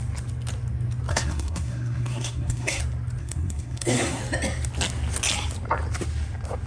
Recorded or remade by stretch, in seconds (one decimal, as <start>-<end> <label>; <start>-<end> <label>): 0.0-1.1 recorded; 1.1-2.8 remade; 2.8-3.2 recorded; 3.2-4.2 remade; 4.2-6.7 recorded